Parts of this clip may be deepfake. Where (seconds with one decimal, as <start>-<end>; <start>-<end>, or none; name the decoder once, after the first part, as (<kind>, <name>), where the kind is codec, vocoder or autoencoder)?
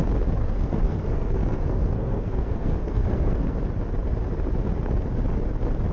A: 0.4-3.6 (codec, SNAC)